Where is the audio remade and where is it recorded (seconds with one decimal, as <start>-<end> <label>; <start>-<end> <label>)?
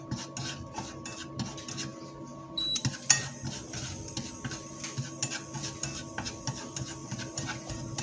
0.0-8.0 recorded